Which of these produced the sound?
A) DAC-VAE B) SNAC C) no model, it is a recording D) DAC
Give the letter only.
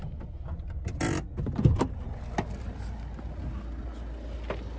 C